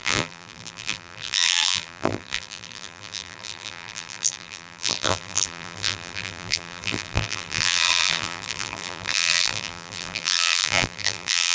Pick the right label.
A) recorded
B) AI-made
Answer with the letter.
B